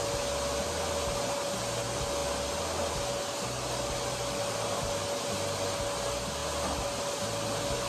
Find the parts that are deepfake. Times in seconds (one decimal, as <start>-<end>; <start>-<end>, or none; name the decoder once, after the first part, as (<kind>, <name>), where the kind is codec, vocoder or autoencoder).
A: none